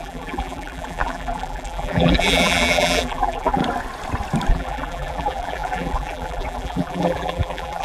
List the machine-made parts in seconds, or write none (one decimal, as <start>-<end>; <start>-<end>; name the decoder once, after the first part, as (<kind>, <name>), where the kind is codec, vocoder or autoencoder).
0.0-3.6 (vocoder, BigVGAN v2); 4.5-7.8